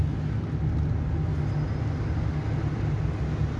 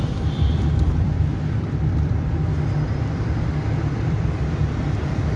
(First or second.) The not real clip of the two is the second